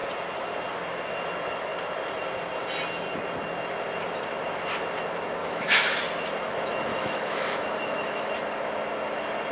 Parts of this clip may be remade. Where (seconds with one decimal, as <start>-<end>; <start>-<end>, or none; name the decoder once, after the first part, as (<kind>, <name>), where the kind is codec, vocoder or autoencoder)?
5.4-6.0 (autoencoder, DAC-VAE); 6.9-8.3